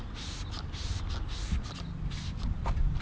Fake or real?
real